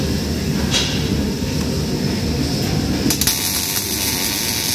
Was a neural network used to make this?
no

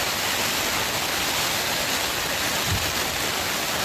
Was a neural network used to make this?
no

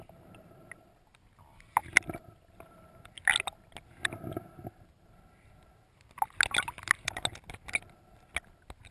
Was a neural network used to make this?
no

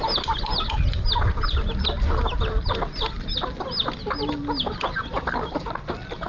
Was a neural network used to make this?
no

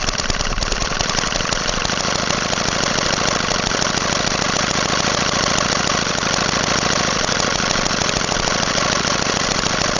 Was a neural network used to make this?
no